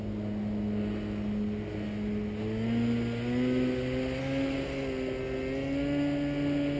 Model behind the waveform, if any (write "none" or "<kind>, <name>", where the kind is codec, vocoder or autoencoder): none